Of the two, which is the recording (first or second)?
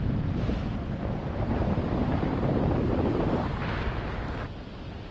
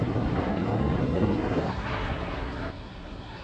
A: first